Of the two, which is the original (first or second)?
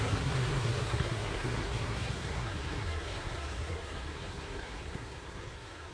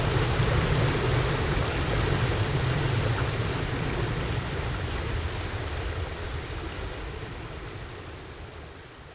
second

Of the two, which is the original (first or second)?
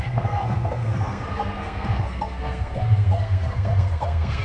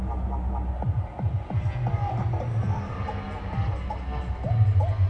second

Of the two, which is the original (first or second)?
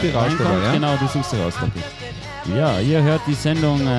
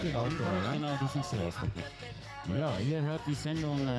first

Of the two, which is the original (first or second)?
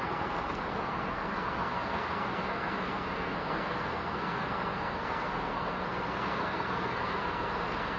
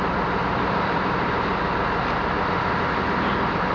second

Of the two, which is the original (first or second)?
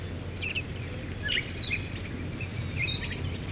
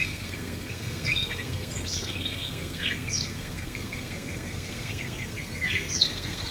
first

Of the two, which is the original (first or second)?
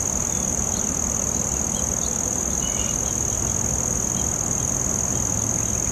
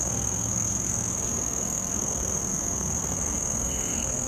first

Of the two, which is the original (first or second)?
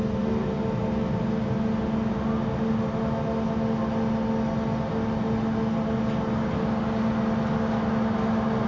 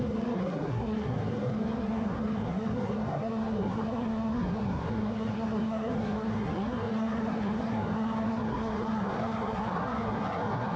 first